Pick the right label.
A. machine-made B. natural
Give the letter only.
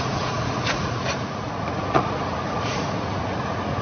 A